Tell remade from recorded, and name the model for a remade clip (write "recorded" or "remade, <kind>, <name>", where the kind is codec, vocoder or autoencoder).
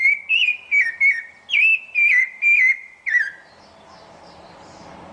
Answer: recorded